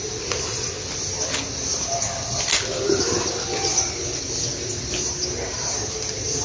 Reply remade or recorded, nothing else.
recorded